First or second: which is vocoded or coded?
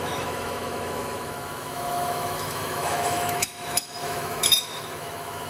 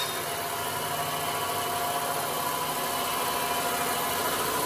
first